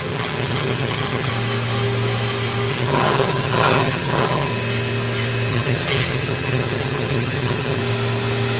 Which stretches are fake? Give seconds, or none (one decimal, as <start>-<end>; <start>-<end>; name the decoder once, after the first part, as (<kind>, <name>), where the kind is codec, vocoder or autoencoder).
0.0-1.3 (vocoder, HiFi-GAN); 2.7-4.5; 5.5-7.8